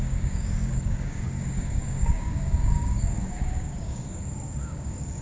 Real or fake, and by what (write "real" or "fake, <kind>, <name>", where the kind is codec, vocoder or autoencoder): fake, codec, DAC